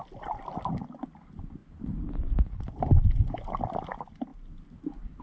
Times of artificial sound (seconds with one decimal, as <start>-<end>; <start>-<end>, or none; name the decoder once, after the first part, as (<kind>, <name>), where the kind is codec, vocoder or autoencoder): 1.6-3.2 (vocoder, BigVGAN v2)